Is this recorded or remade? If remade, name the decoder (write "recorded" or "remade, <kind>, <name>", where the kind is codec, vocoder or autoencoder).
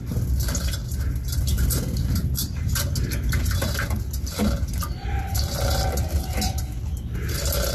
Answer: recorded